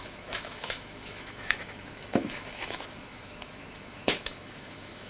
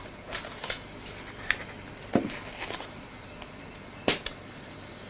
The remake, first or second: first